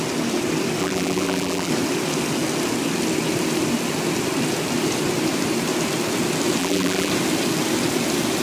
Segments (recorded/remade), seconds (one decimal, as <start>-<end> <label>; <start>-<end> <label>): 0.0-0.8 recorded; 0.8-1.7 remade; 1.7-6.6 recorded; 6.6-7.1 remade; 7.1-8.4 recorded